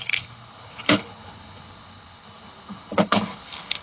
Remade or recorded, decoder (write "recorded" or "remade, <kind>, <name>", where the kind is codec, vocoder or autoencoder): remade, codec, HILCodec